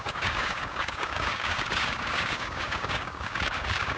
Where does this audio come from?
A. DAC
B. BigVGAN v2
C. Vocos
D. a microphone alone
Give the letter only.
A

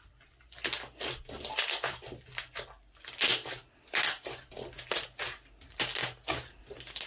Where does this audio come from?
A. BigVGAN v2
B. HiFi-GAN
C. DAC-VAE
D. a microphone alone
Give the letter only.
D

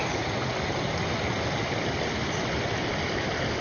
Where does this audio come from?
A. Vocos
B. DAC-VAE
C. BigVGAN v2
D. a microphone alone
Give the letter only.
D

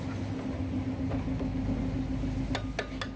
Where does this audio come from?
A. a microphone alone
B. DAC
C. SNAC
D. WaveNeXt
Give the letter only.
A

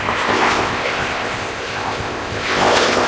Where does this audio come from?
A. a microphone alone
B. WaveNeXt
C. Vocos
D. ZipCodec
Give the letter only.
D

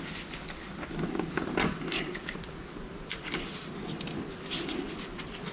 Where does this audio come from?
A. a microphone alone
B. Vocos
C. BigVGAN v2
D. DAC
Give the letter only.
A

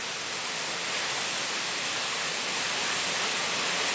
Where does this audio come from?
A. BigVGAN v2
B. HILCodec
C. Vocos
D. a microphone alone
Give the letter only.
D